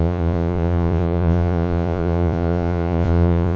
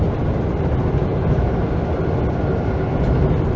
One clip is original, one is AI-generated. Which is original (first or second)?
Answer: second